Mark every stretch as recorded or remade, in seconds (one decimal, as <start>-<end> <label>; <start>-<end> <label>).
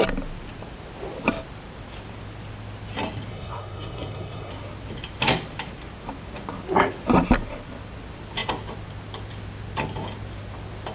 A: 0.0-3.3 recorded; 3.3-4.5 remade; 4.5-10.9 recorded